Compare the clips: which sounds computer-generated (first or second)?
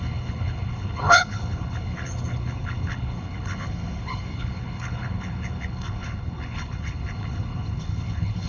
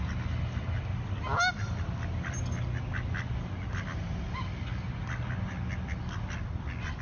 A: first